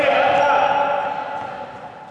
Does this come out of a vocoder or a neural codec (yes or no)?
no